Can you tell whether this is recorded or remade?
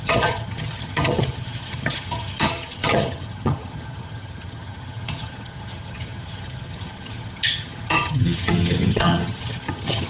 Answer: remade